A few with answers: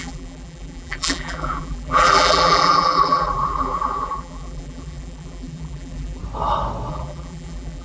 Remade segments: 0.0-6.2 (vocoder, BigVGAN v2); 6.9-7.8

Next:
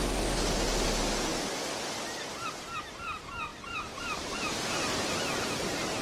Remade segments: 3.5-4.5 (vocoder, BigVGAN v2)

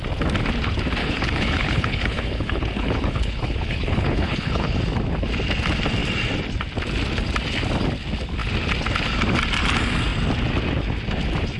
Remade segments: 1.0-4.8 (codec, HILCodec)